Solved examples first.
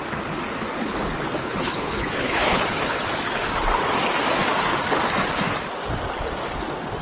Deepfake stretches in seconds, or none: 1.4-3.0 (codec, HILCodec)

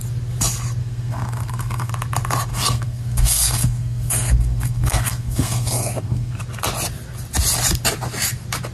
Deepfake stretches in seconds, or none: 0.8-1.9 (codec, SNAC); 2.5-6.4

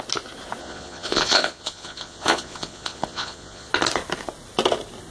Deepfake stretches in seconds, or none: 0.6-3.7 (vocoder, Vocos)

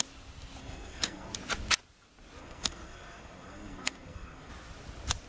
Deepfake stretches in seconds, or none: 0.6-1.3 (codec, SNAC); 2.4-4.5